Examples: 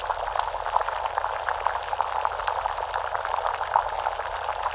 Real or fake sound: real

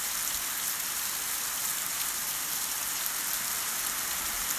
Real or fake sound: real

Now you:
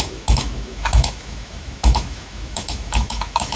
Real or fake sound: fake